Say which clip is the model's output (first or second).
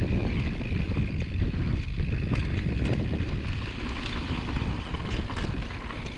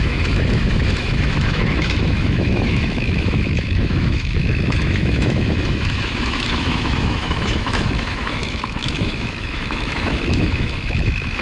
second